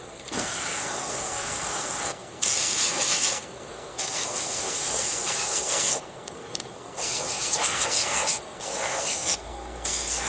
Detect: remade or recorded remade